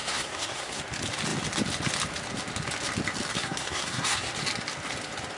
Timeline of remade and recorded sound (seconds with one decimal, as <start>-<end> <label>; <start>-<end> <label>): 0.0-0.8 remade; 0.8-3.3 recorded; 3.3-4.3 remade; 4.3-5.4 recorded